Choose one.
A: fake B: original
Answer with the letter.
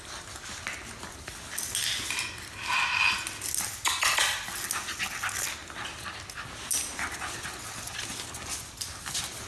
B